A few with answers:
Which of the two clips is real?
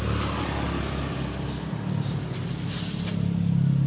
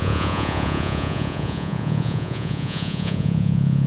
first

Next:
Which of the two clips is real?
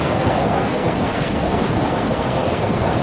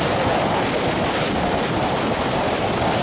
second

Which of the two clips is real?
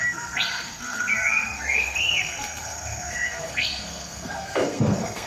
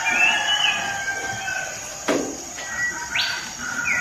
second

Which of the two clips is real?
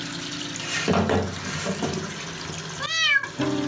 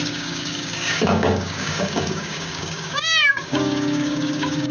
first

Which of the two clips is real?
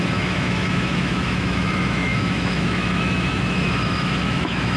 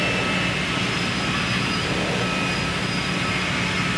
second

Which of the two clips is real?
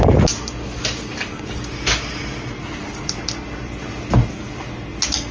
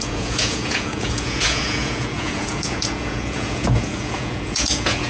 first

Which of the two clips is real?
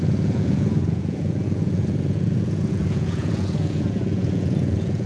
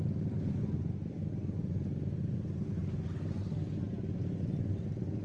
second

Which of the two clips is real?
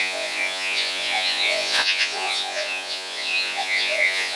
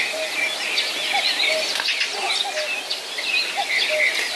second